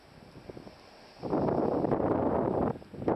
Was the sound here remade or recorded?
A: recorded